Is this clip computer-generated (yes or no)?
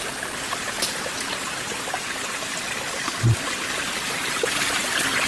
no